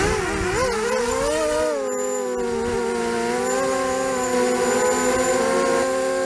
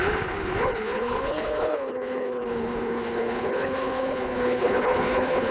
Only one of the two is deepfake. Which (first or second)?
second